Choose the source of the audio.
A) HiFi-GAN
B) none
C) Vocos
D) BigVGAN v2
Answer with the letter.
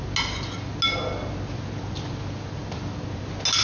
B